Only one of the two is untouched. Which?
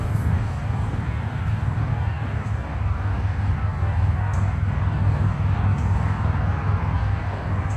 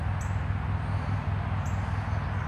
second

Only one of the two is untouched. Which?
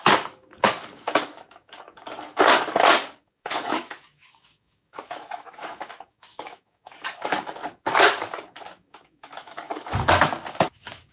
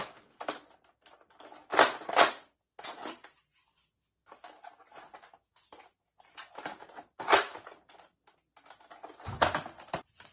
second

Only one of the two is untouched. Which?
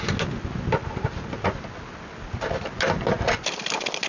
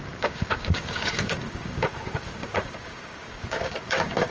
first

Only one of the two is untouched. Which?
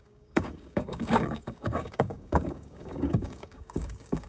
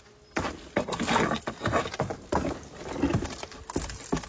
second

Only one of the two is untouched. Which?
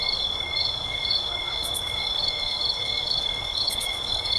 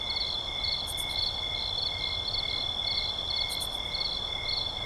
second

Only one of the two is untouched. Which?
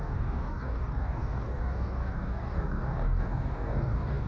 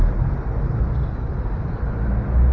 second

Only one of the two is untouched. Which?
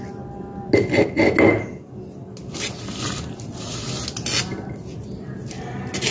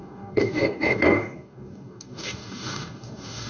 first